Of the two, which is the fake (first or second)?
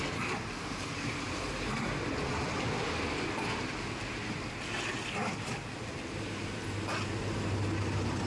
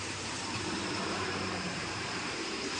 second